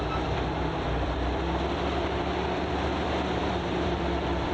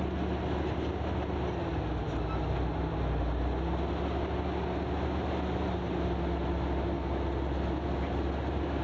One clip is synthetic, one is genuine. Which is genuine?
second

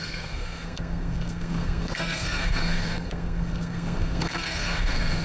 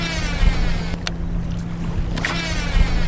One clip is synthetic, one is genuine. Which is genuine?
second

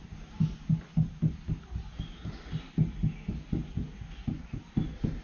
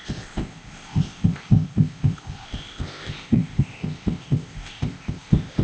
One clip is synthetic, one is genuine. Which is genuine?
first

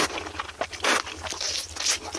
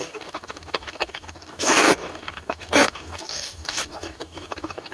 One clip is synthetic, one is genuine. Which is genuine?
first